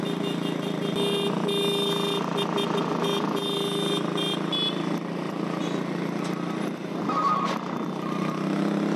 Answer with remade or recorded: recorded